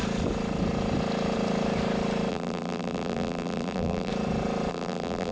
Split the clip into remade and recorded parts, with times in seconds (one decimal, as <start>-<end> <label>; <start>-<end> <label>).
0.0-2.3 recorded; 2.3-4.1 remade; 4.1-4.7 recorded; 4.7-5.3 remade